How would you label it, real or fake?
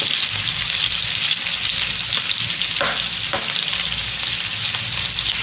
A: real